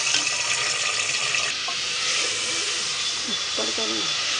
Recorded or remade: recorded